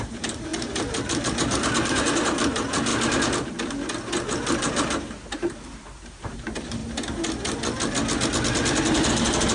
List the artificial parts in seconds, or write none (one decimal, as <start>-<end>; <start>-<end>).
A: 0.0-2.9; 4.3-6.8; 9.1-9.5